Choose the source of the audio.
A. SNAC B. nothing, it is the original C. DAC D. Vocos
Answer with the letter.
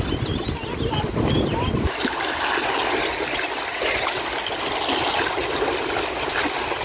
B